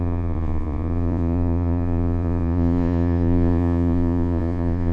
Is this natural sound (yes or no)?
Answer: no